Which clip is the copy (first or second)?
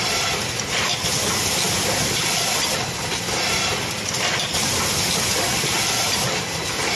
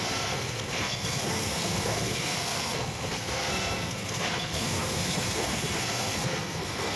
second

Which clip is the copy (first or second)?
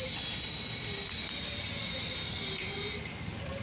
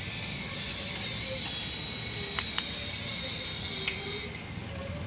first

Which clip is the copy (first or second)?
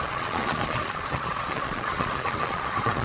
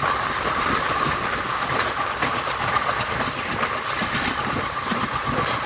first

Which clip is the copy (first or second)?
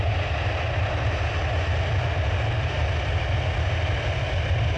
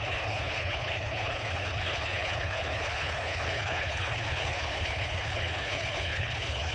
second